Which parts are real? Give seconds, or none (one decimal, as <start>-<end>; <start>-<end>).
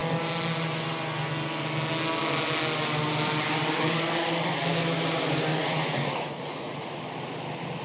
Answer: 0.0-5.5; 7.0-7.8